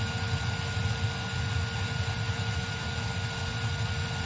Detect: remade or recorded recorded